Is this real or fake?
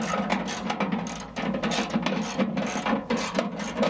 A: real